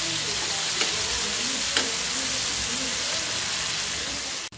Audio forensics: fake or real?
real